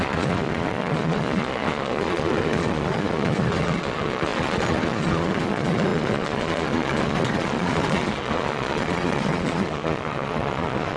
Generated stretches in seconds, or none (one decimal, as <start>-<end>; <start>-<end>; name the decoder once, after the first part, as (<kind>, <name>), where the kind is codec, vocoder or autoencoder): 0.0-11.0 (vocoder, Vocos)